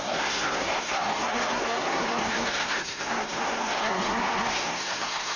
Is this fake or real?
fake